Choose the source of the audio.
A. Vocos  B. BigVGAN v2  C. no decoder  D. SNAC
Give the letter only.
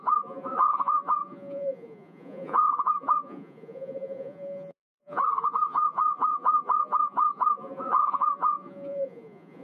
A